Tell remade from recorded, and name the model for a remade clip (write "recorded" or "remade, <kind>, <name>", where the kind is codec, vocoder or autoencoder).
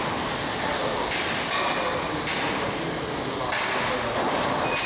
recorded